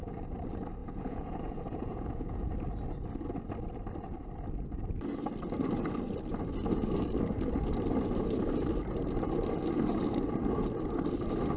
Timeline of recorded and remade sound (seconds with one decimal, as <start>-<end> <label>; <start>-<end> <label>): 0.0-0.8 recorded; 0.8-2.5 remade; 2.5-11.6 recorded